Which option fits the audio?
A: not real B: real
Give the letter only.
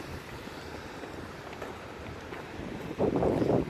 A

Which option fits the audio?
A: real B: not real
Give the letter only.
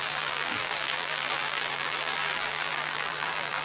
B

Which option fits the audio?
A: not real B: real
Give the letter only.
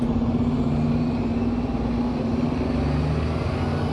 B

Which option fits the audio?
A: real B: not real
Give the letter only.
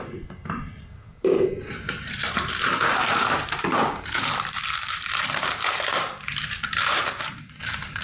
B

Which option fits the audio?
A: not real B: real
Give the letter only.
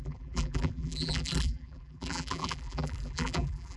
A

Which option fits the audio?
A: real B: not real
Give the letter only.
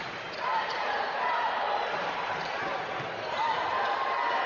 B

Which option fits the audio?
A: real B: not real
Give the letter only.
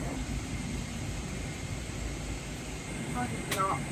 A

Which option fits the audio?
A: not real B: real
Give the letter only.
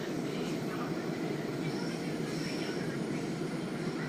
A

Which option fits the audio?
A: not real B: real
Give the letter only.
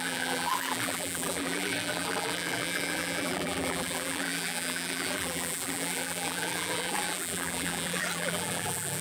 A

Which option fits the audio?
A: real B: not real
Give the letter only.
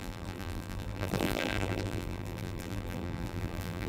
B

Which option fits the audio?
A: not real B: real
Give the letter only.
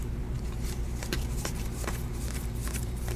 A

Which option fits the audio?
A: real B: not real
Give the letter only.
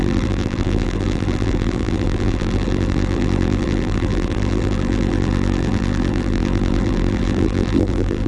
B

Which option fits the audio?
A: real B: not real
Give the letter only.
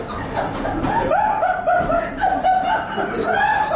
A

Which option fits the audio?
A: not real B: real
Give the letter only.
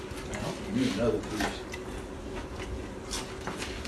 B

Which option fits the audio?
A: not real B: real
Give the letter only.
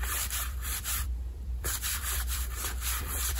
A